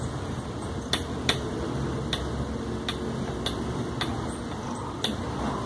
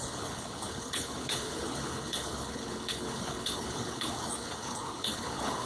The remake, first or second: second